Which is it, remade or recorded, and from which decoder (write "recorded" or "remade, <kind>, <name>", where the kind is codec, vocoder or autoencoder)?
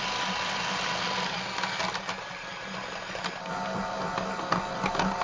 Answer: recorded